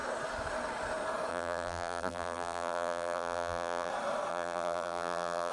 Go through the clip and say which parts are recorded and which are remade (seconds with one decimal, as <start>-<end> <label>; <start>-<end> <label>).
0.0-1.3 recorded; 1.3-3.9 remade; 3.9-4.3 recorded; 4.3-5.5 remade